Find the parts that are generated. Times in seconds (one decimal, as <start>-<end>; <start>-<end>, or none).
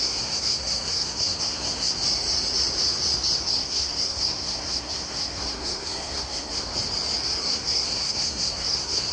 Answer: 0.0-1.9; 3.5-6.7; 7.4-9.1